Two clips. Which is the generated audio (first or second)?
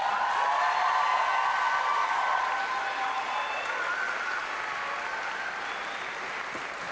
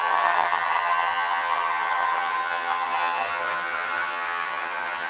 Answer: second